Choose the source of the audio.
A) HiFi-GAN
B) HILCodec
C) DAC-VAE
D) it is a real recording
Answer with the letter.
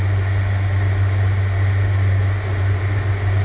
D